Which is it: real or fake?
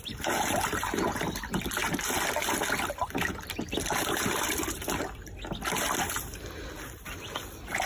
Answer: real